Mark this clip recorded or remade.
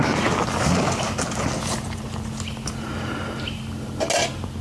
recorded